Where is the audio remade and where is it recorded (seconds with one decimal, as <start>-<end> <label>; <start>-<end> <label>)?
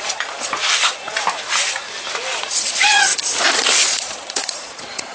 0.0-0.6 remade; 0.6-2.4 recorded; 2.4-3.1 remade; 3.1-3.8 recorded; 3.8-5.1 remade